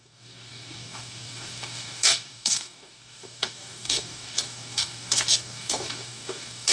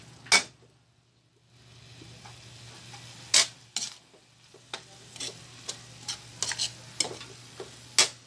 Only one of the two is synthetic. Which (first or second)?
first